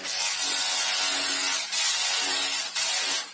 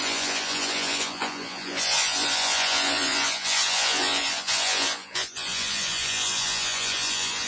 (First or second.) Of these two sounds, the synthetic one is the second